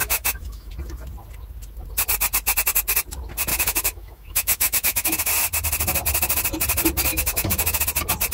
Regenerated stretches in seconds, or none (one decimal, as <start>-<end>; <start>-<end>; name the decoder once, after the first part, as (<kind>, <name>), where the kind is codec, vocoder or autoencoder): 0.0-0.7 (autoencoder, DAC-VAE); 3.5-5.3; 7.1-7.8